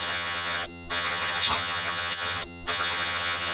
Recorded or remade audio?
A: remade